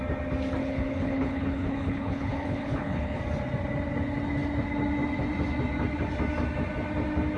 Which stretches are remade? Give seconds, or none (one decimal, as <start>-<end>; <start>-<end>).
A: 0.6-3.2